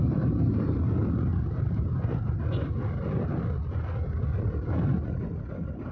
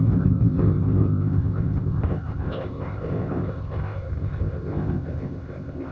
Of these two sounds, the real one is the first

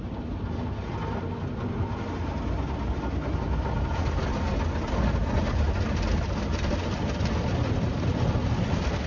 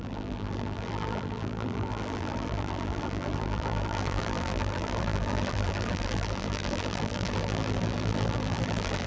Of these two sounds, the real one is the first